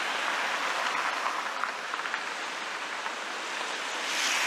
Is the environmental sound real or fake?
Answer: real